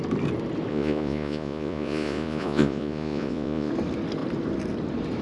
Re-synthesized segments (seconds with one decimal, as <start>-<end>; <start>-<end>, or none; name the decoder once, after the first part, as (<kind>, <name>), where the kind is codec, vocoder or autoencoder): 0.7-3.7 (vocoder, Vocos)

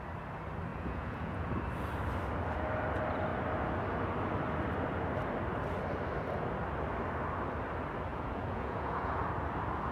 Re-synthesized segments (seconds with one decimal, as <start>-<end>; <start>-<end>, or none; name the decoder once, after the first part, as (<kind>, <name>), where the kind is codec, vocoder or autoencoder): 0.7-1.5 (vocoder, Vocos); 8.1-9.2

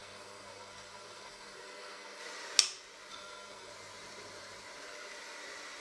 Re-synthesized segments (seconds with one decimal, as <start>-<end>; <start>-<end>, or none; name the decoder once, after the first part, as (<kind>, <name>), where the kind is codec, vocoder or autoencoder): 0.0-2.2 (codec, SNAC); 3.1-3.7

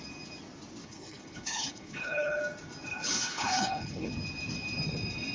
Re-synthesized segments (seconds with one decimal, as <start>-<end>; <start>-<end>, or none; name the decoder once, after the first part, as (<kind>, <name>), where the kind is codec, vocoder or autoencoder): 0.8-2.4 (codec, HILCodec); 2.9-4.1

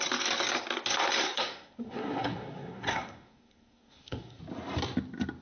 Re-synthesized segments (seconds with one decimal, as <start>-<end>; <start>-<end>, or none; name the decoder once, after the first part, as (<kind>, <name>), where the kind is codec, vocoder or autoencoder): 1.2-4.4 (codec, SNAC)

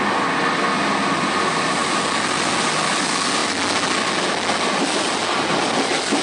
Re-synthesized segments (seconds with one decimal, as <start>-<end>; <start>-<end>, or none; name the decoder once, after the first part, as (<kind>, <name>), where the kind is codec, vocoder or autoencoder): none

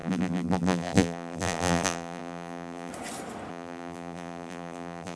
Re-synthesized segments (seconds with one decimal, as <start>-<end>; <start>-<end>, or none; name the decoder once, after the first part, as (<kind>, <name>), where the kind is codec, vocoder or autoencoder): 0.0-2.9 (vocoder, BigVGAN v2); 3.5-5.2

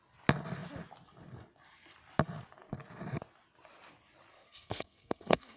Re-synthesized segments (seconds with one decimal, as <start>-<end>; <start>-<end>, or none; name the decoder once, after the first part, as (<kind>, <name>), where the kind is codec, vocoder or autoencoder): 4.3-5.6 (codec, SNAC)